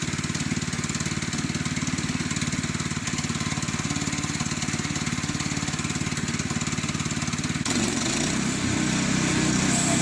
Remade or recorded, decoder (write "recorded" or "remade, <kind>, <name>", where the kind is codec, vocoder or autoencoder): recorded